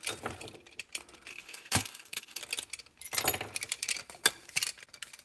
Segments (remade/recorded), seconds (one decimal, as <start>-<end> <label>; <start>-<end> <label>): 0.0-1.3 recorded; 1.3-2.4 remade; 2.4-5.2 recorded